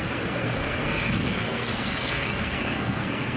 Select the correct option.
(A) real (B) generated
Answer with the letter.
B